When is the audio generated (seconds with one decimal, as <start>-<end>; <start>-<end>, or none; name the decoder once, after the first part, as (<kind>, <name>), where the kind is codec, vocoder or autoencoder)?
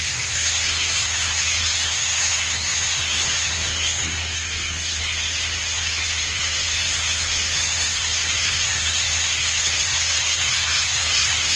0.0-11.6 (codec, SNAC)